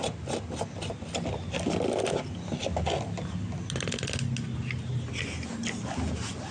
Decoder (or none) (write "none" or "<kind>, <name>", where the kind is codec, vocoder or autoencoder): none